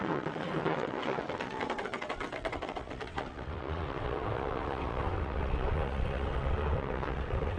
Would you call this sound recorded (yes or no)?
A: no